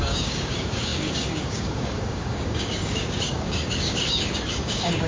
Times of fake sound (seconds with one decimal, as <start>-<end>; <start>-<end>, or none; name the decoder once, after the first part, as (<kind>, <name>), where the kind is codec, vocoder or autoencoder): 0.0-5.1 (codec, DAC)